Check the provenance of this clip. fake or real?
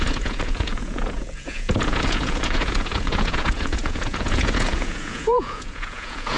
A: fake